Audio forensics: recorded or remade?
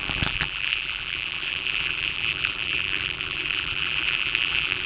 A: remade